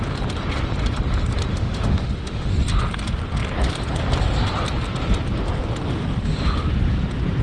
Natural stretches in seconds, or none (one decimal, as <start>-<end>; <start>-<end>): 0.0-1.5; 2.5-7.4